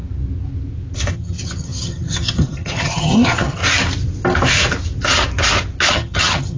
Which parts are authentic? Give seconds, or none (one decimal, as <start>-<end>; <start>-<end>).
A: 0.0-1.1; 3.6-5.9